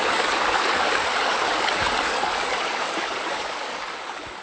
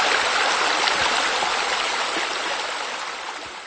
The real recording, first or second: second